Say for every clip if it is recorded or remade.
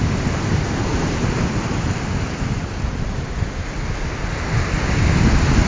recorded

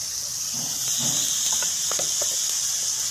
recorded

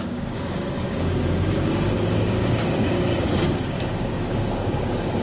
remade